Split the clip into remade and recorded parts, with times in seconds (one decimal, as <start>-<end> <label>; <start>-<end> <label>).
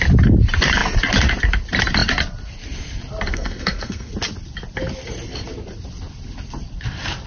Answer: 0.0-3.3 recorded; 3.3-4.1 remade; 4.1-7.3 recorded